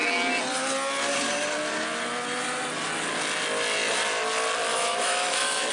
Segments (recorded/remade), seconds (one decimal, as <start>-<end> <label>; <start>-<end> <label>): 0.0-4.7 recorded; 4.7-5.7 remade